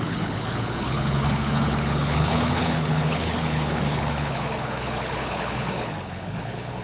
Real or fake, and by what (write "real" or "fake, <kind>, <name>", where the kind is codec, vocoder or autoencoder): fake, codec, HILCodec